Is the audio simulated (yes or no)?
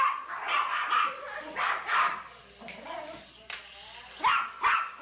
no